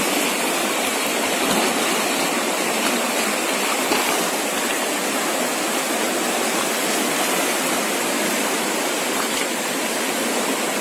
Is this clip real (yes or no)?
no